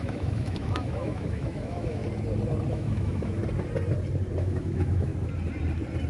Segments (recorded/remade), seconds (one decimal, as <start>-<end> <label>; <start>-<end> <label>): 0.0-2.0 remade; 2.0-2.7 recorded; 2.7-3.4 remade; 3.4-4.4 recorded; 4.4-5.1 remade; 5.1-6.1 recorded